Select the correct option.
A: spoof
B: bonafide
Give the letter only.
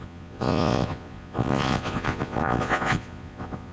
A